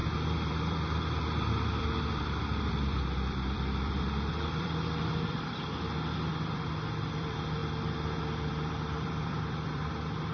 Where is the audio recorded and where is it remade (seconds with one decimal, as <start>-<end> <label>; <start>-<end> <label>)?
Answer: 0.0-10.3 remade